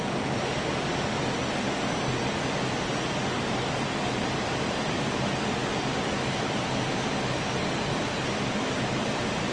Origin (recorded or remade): recorded